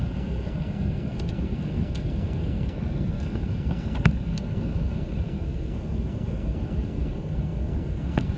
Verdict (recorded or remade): remade